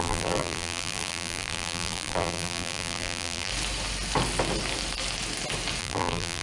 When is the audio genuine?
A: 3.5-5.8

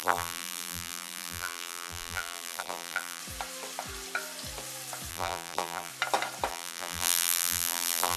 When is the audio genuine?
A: 3.2-5.1; 5.9-6.5

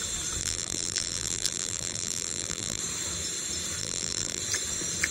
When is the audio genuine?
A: 0.0-0.4; 2.8-3.8; 4.4-5.1

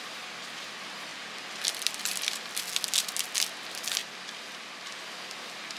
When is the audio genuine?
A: 0.0-1.1; 2.6-4.0; 4.9-5.8

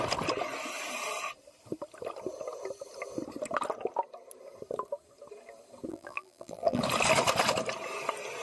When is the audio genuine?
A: 0.0-5.9; 6.8-8.4

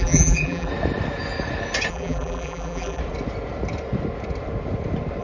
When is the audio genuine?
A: 0.7-1.9; 3.0-5.2